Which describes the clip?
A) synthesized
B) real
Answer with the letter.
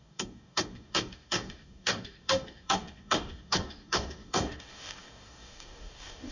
A